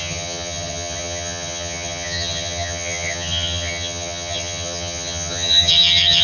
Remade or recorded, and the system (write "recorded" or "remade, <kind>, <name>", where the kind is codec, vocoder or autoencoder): remade, vocoder, HiFi-GAN